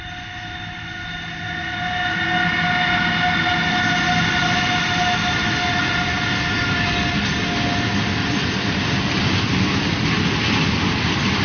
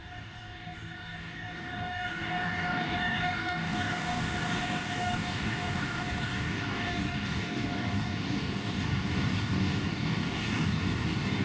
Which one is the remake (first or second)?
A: second